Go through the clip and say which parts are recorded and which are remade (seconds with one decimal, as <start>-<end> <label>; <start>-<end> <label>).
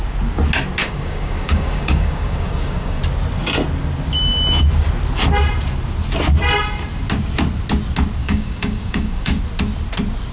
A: 0.0-0.8 recorded; 0.8-3.0 remade; 3.0-8.2 recorded; 8.2-9.4 remade; 9.4-10.3 recorded